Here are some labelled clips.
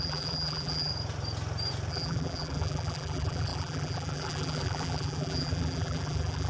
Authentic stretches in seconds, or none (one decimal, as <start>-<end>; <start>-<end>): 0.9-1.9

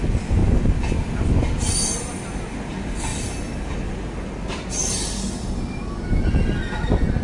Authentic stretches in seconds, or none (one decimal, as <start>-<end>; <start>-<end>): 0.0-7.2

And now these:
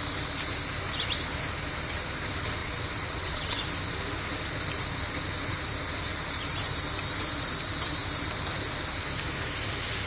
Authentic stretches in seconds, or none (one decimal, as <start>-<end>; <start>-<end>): 0.0-2.6; 3.6-10.1

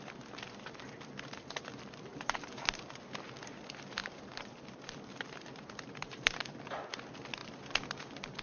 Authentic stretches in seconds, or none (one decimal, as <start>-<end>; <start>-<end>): 0.0-2.1; 2.7-4.0; 6.6-8.4

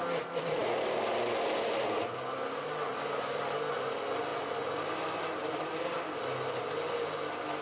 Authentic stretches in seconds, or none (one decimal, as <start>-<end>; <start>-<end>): 0.0-7.6